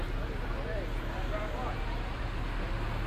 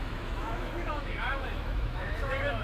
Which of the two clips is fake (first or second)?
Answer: second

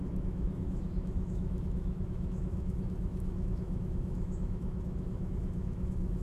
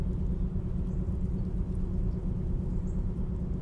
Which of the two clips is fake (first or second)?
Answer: first